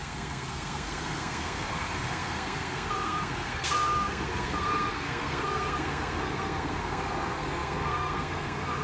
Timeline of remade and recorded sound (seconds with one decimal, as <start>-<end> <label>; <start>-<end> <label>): 0.0-8.8 remade